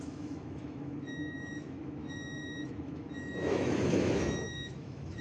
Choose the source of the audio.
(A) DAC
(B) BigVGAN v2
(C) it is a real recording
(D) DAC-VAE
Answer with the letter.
D